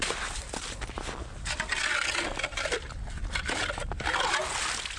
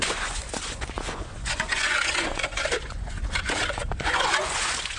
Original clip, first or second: first